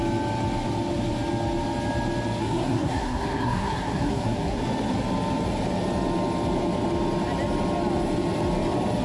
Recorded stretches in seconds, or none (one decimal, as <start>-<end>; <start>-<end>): 0.0-2.4; 4.6-9.0